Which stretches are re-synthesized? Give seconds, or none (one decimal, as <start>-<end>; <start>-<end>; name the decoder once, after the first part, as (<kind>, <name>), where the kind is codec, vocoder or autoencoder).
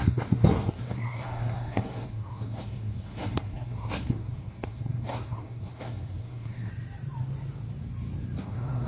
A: 0.0-6.7 (codec, SNAC); 8.4-8.9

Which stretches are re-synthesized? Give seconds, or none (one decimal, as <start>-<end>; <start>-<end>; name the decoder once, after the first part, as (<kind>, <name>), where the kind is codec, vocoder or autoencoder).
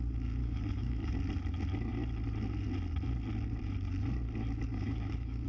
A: 0.4-1.1 (autoencoder, DAC-VAE); 4.7-5.5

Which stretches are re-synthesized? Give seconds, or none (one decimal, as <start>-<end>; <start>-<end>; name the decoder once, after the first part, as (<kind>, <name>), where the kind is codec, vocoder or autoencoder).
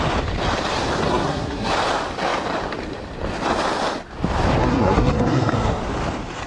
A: 1.1-1.7 (codec, SNAC); 4.6-5.8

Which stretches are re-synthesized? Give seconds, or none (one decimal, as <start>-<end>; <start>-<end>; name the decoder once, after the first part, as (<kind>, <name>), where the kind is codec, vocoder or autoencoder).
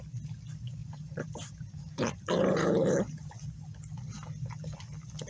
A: 0.8-3.3 (vocoder, BigVGAN v2)